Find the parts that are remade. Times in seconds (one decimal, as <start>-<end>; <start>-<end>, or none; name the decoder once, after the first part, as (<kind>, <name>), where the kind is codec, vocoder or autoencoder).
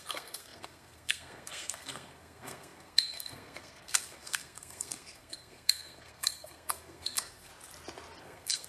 0.0-7.5 (codec, SNAC); 8.2-8.7